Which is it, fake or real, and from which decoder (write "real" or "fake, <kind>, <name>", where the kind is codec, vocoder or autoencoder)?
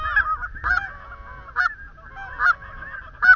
real